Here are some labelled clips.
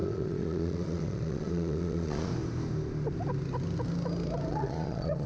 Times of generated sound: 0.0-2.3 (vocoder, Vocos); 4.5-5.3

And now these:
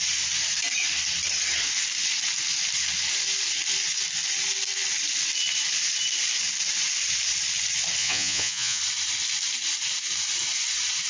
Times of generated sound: 8.0-8.8 (vocoder, Vocos)

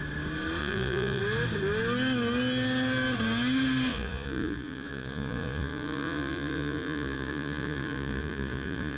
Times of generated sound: 0.6-1.2 (vocoder, Vocos); 3.9-9.0

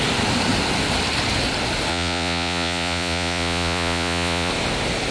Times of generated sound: 1.9-4.5 (vocoder, Vocos)

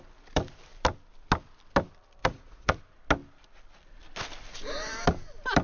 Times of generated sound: 2.2-2.8 (vocoder, Vocos)

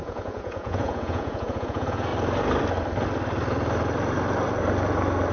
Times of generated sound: 0.0-2.1 (vocoder, Vocos)

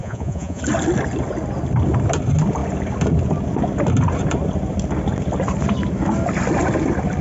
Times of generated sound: 0.0-0.6 (vocoder, Vocos)